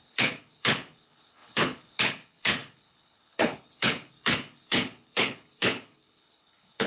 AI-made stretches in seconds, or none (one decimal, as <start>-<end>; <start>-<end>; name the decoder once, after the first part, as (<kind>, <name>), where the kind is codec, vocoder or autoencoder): 0.0-6.9 (codec, HILCodec)